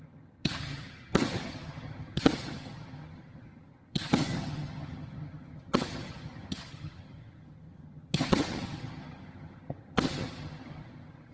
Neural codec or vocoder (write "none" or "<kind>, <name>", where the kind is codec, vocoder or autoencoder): vocoder, HiFi-GAN